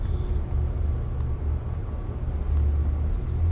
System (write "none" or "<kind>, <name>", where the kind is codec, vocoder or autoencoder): none